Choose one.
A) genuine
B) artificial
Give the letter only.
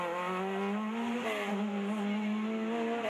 A